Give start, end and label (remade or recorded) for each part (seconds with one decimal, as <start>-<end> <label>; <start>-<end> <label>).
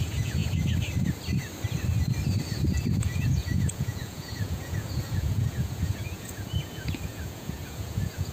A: 0.0-0.4 remade; 0.4-2.9 recorded; 2.9-8.3 remade